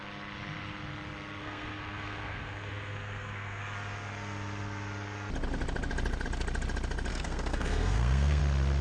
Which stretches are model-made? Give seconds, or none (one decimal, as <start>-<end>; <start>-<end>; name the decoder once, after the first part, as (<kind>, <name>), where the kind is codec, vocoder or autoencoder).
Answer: 1.4-3.6 (codec, SNAC); 7.1-8.4